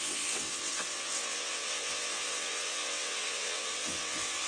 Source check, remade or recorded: remade